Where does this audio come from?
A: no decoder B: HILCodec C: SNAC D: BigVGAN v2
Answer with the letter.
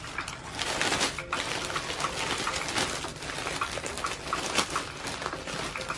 A